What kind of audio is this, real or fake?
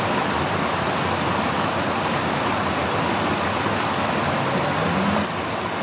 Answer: real